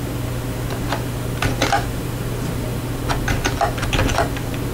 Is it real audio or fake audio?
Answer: real